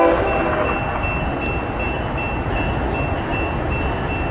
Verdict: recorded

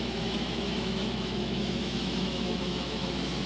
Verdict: remade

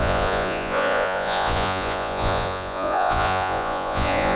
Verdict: remade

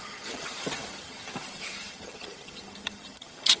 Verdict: remade